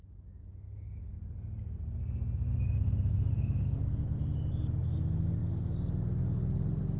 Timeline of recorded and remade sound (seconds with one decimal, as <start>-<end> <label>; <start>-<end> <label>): 0.0-0.4 recorded; 0.4-1.1 remade; 1.1-3.1 recorded; 3.1-3.8 remade; 3.8-7.0 recorded